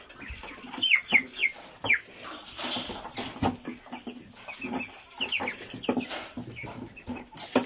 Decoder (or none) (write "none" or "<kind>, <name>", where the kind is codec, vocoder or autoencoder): none